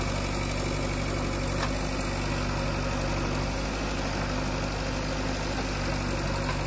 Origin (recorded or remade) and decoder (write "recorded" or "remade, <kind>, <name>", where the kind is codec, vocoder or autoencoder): recorded